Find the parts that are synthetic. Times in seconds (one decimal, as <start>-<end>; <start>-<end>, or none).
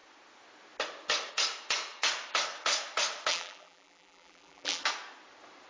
3.3-4.8